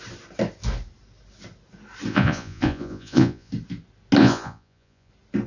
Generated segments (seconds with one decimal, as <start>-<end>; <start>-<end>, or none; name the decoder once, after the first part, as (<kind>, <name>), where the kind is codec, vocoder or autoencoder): 2.1-3.5 (vocoder, Vocos); 4.2-5.1